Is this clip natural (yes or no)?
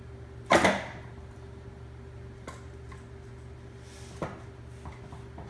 yes